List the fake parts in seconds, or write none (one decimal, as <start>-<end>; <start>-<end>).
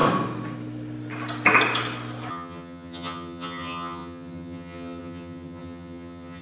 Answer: 2.3-6.4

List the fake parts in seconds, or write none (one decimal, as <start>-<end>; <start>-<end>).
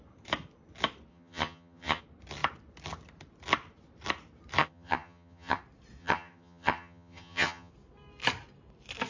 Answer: 1.1-2.0; 4.6-5.6; 6.0-7.7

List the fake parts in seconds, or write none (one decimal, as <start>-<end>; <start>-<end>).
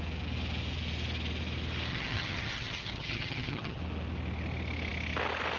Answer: 1.9-3.8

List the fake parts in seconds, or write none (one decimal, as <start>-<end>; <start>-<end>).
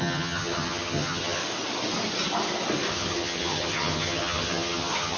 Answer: 0.0-1.4; 2.9-5.2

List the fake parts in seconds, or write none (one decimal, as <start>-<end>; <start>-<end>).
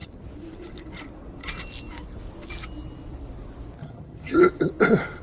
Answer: 3.8-4.4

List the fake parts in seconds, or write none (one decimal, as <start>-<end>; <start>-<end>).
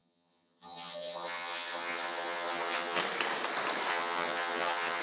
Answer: 0.0-3.0; 3.9-5.0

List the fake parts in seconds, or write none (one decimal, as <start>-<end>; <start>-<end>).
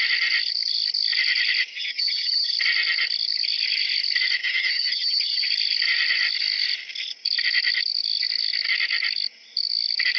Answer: 1.7-2.5; 4.4-5.5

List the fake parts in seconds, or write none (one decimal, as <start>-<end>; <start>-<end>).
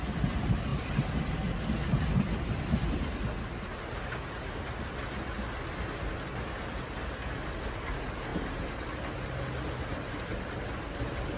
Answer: none